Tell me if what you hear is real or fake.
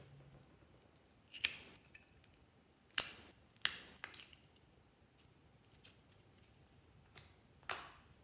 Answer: real